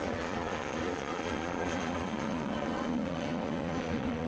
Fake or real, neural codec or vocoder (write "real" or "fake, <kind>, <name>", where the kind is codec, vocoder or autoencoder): fake, vocoder, Vocos